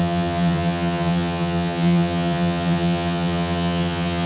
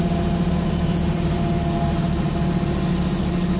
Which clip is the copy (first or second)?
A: first